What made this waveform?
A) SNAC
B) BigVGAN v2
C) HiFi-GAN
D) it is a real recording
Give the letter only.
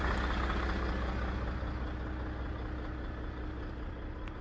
D